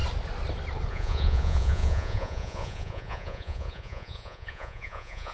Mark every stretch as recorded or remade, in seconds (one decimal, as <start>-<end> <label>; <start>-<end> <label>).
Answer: 0.0-0.9 recorded; 0.9-5.3 remade